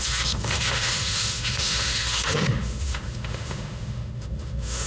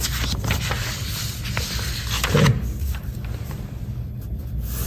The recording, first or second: second